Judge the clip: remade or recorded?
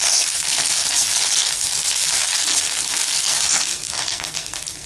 remade